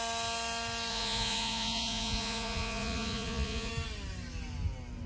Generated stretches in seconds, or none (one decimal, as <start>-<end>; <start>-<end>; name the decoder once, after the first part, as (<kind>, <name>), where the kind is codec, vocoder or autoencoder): 0.9-3.7 (vocoder, Vocos)